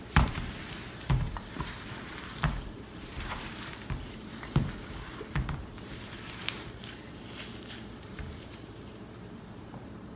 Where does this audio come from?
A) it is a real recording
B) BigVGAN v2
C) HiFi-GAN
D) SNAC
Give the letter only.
B